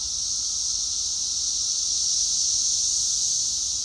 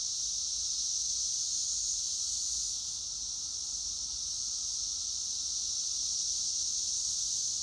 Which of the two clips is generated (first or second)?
second